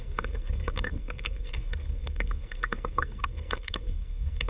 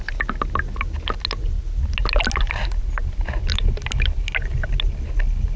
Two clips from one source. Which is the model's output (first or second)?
first